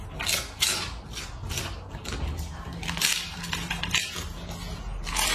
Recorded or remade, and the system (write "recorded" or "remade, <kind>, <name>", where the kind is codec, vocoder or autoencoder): recorded